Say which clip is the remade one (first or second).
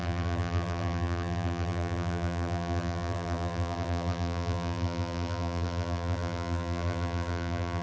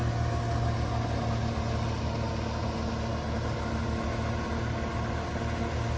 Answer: first